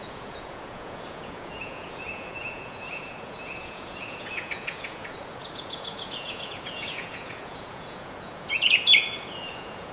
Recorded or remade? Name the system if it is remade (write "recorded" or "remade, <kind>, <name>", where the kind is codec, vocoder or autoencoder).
remade, vocoder, Vocos